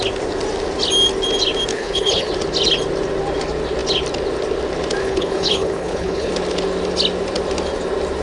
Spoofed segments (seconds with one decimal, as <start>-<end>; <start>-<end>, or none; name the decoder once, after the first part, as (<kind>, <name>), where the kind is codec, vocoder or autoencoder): 1.7-2.3 (codec, HILCodec); 5.0-6.3